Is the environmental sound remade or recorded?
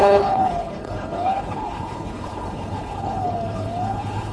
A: remade